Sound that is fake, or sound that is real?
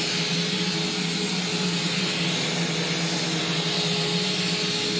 real